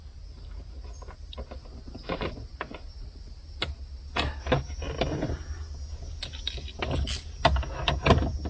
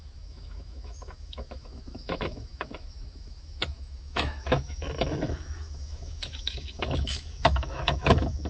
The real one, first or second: first